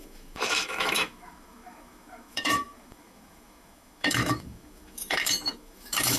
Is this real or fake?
fake